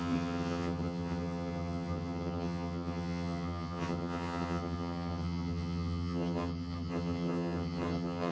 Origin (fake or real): fake